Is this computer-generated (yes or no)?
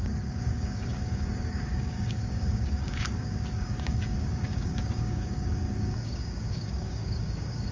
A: yes